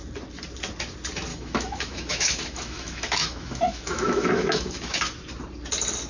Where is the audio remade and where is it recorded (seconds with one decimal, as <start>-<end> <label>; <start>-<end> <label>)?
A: 0.0-1.3 recorded; 1.3-5.0 remade; 5.0-6.1 recorded